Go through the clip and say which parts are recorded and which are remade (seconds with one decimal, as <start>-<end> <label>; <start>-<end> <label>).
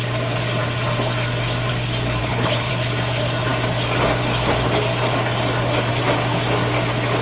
0.0-2.2 recorded; 2.2-2.7 remade; 2.7-7.2 recorded